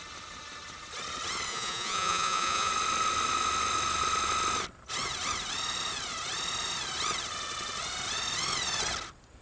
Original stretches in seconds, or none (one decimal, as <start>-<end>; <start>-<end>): 0.0-1.5; 2.7-9.4